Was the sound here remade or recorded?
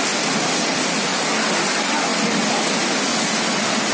recorded